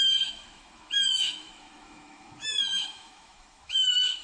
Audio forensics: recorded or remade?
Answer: remade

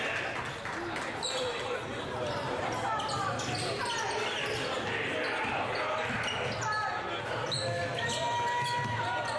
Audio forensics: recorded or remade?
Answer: recorded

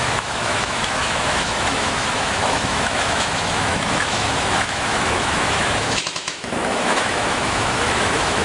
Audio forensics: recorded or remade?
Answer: remade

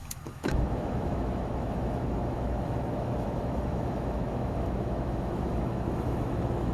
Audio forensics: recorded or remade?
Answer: remade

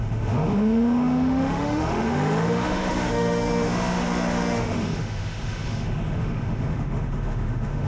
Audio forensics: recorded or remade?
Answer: remade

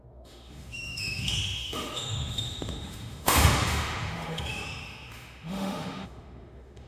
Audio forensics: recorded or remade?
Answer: remade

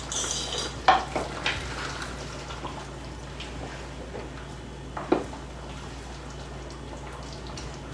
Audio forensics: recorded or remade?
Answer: recorded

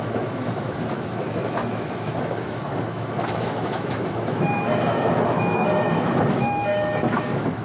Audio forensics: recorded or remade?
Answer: remade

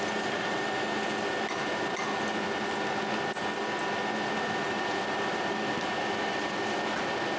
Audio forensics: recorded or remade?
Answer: recorded